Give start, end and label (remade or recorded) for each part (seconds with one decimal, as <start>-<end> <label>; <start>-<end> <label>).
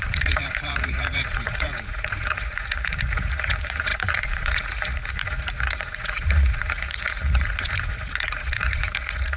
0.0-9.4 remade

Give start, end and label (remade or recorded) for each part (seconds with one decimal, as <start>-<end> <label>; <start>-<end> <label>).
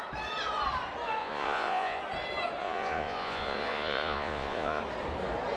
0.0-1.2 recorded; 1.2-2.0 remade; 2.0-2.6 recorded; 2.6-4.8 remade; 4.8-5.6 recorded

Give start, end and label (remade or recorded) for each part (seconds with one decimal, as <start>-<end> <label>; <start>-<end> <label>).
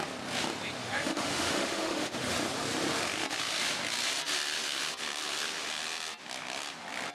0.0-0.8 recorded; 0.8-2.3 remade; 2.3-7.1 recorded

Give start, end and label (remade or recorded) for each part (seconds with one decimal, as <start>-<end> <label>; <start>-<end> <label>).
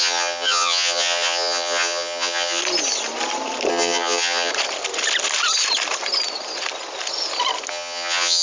0.0-2.6 remade; 2.6-3.7 recorded; 3.7-4.5 remade; 4.5-7.7 recorded; 7.7-8.4 remade